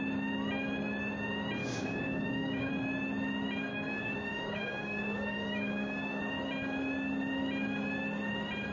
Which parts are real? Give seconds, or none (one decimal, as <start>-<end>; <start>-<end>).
0.0-1.6; 2.7-3.7; 6.2-8.7